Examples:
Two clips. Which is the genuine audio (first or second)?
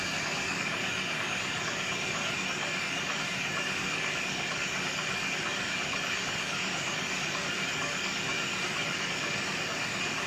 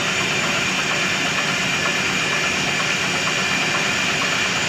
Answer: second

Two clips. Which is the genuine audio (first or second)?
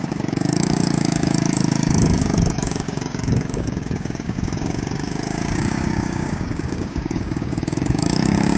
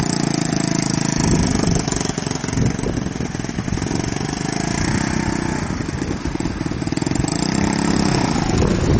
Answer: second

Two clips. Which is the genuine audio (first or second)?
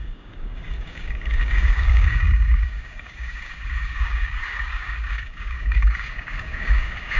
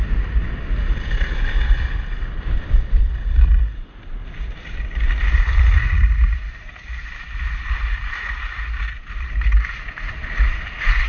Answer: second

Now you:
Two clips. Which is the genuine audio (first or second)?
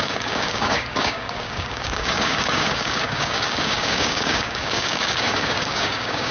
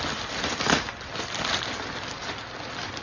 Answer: second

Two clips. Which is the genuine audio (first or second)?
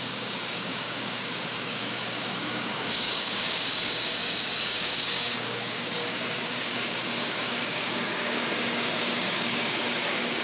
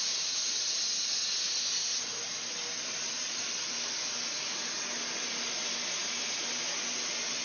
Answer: second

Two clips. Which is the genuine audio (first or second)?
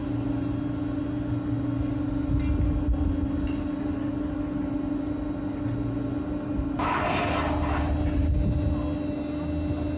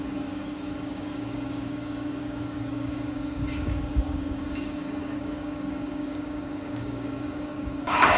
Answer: first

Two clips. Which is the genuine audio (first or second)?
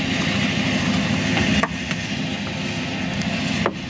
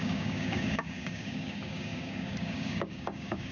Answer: first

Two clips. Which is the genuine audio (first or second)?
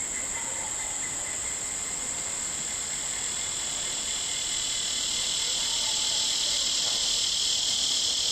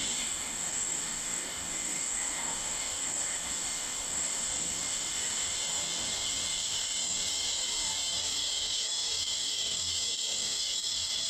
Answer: first